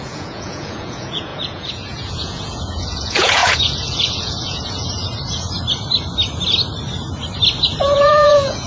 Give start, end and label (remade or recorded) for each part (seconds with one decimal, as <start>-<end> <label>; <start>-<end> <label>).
0.0-5.1 remade; 5.1-7.8 recorded; 7.8-8.7 remade